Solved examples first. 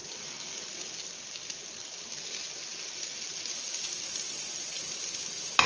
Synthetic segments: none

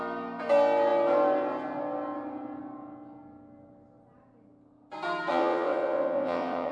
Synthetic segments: 5.3-6.7 (vocoder, WaveNeXt)

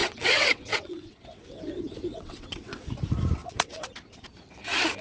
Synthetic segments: 0.0-1.6 (vocoder, WaveNeXt); 2.1-2.9; 3.4-3.9